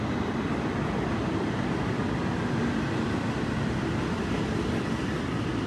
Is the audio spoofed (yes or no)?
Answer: no